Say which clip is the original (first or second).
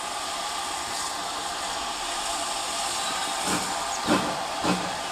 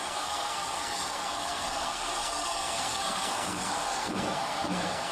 first